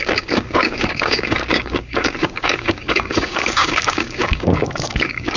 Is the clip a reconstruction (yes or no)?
yes